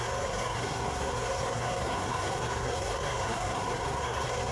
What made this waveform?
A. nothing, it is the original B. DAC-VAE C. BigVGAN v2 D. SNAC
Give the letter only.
D